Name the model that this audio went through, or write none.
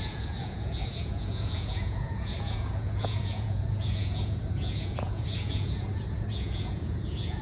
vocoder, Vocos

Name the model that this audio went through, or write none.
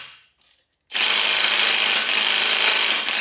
none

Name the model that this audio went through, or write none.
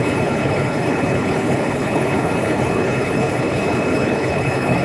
codec, HILCodec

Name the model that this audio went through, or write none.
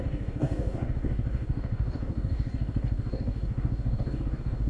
codec, DAC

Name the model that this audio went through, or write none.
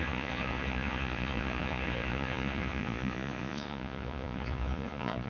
vocoder, Vocos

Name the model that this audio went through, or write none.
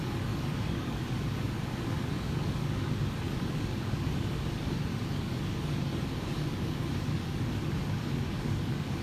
codec, DAC